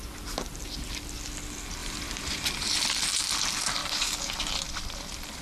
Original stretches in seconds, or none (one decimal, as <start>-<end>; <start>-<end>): 0.0-1.8; 2.7-3.8